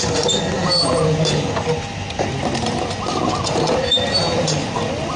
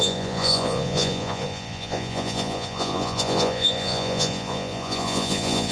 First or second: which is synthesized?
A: second